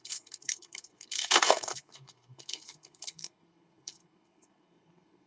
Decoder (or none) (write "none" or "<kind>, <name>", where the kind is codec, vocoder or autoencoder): codec, SNAC